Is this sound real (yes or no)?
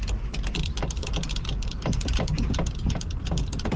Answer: yes